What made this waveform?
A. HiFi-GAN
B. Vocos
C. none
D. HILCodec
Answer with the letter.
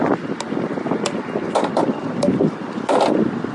C